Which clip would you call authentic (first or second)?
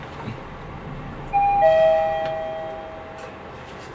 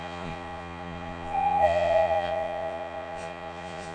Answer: first